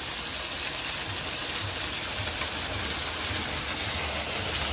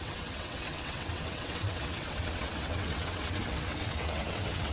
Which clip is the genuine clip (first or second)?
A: first